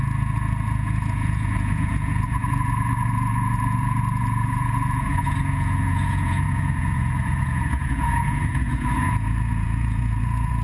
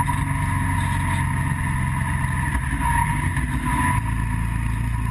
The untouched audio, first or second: second